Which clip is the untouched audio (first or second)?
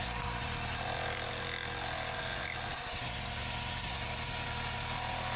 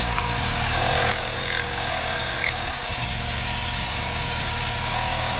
first